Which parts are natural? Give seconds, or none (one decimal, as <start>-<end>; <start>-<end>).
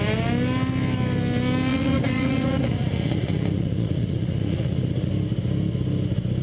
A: 0.0-1.7; 5.1-6.4